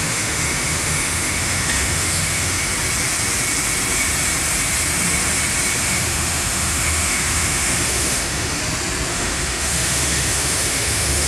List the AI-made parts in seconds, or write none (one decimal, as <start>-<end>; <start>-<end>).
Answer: 0.0-2.6; 5.8-8.6; 9.1-11.3